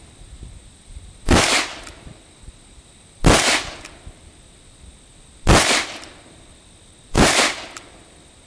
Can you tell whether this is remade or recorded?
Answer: remade